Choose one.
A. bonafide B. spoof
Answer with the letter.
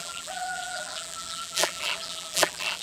B